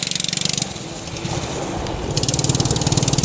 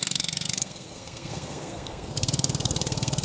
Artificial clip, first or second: second